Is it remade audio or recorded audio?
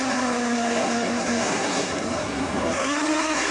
remade